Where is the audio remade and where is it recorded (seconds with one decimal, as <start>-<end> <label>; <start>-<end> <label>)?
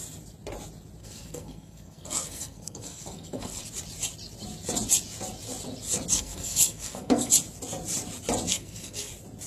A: 0.0-1.0 recorded; 1.0-3.6 remade; 3.6-6.1 recorded; 6.1-7.3 remade; 7.3-8.5 recorded; 8.5-9.1 remade; 9.1-9.5 recorded